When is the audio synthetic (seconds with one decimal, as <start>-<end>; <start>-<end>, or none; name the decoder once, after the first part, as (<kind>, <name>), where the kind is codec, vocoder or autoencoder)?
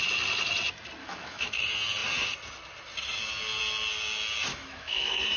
1.0-1.6 (autoencoder, DAC-VAE); 4.5-5.4